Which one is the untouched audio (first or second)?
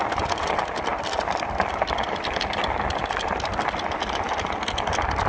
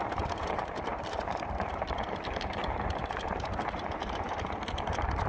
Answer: first